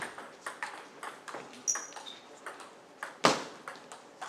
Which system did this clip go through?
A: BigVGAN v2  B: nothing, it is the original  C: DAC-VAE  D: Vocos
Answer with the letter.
B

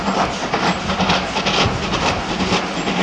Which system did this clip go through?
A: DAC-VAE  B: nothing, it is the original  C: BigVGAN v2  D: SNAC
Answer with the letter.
B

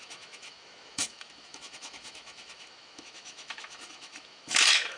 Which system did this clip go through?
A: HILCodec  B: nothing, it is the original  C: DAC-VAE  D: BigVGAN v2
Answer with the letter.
C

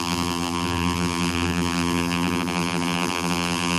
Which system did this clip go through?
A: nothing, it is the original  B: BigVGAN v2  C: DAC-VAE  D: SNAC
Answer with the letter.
B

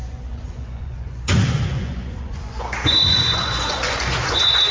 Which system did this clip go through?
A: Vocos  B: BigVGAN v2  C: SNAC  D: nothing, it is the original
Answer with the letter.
A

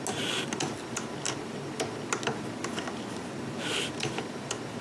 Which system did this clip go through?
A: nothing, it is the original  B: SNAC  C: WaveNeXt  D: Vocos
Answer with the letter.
A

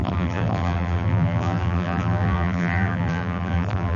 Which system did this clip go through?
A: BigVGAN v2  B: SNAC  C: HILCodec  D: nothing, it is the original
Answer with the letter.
A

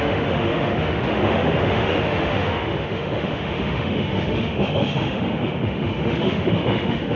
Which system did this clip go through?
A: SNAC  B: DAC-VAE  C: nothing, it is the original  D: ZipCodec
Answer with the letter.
B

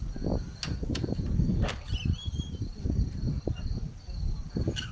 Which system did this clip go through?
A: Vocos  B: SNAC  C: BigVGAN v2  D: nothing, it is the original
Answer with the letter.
D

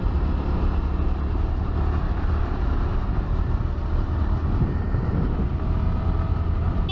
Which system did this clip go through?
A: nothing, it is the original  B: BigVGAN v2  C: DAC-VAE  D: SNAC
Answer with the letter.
A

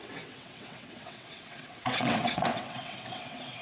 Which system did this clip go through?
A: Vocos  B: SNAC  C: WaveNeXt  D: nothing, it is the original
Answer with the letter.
C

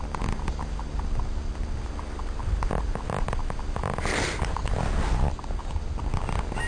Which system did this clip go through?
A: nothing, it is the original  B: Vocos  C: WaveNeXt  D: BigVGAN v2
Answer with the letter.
A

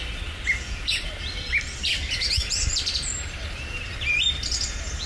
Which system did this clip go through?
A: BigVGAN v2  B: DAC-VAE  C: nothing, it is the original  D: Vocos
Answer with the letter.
A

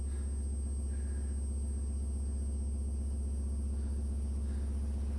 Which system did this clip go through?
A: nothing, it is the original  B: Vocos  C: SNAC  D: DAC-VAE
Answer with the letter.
A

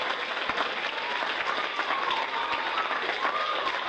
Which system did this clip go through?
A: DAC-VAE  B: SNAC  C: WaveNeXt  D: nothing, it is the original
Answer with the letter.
D